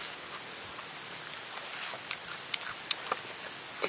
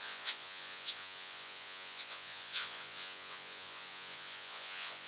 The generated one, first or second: second